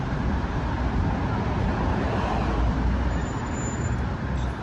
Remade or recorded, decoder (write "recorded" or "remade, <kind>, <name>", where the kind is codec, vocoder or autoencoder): remade, vocoder, BigVGAN v2